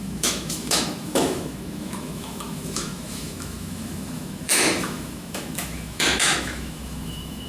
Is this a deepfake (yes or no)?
yes